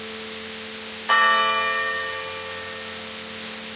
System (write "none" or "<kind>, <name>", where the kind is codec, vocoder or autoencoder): none